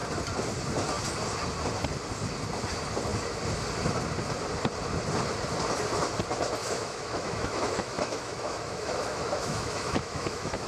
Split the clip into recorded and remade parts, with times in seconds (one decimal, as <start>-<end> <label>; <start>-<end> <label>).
0.0-6.6 recorded; 6.6-10.7 remade